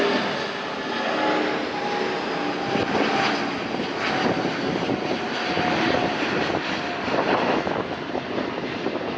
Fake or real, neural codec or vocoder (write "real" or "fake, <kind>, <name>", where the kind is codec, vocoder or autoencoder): real